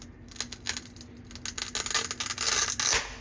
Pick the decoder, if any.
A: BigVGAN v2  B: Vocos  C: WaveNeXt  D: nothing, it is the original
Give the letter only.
D